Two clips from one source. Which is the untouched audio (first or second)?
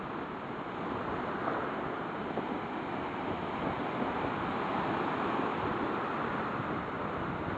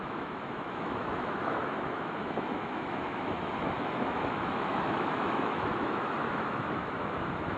first